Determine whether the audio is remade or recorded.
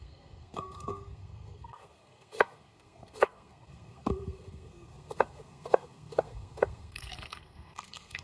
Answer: remade